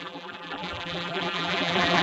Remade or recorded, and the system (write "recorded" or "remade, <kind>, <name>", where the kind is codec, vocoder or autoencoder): remade, vocoder, BigVGAN v2